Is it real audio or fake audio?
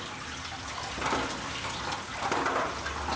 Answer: real